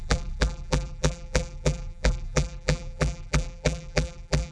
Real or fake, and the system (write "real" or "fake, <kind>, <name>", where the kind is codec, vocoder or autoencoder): fake, vocoder, BigVGAN v2